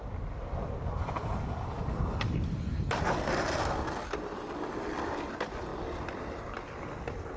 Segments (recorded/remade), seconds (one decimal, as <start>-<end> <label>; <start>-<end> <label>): 0.0-7.4 recorded